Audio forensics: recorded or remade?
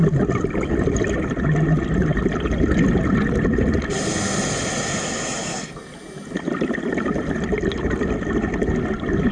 recorded